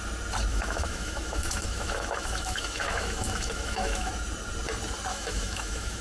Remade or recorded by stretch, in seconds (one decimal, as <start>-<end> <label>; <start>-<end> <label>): 0.0-0.5 recorded; 0.5-4.1 remade; 4.1-5.1 recorded; 5.1-6.0 remade